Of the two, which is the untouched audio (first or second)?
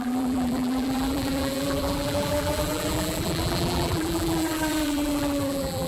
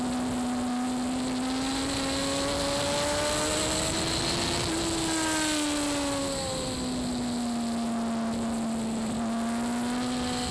second